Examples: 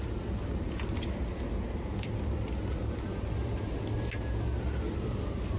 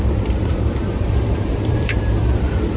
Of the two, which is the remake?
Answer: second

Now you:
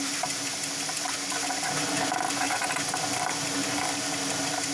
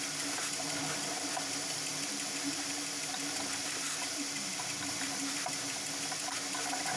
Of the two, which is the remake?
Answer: second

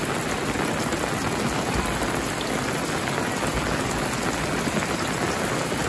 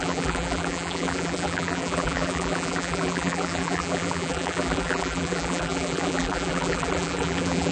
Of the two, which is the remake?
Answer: second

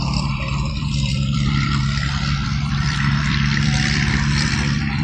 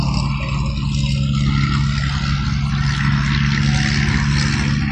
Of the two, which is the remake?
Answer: first